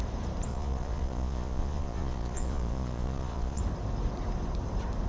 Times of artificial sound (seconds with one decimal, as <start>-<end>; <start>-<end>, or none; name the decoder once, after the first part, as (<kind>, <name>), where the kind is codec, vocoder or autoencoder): 0.5-3.6 (vocoder, Vocos)